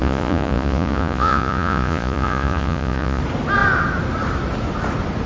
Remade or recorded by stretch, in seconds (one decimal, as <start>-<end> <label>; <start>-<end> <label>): 0.0-3.2 remade; 3.2-5.3 recorded